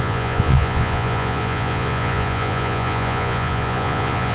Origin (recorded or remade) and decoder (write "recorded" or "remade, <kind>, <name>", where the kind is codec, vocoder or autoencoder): remade, vocoder, Vocos